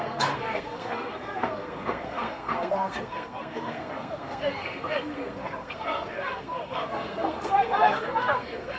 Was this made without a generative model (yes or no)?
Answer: no